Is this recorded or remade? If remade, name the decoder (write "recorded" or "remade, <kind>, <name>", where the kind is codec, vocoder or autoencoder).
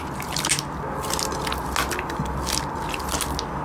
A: recorded